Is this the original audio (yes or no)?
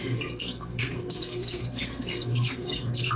no